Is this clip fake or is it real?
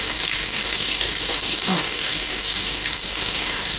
fake